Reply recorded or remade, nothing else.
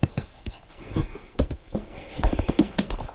remade